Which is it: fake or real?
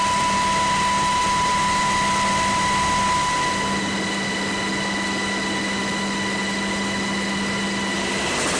real